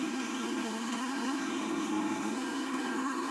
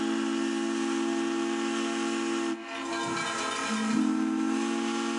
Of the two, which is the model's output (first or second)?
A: first